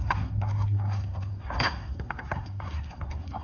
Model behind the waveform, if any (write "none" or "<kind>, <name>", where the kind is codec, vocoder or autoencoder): codec, SNAC